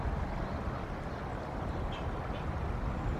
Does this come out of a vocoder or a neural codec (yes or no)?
no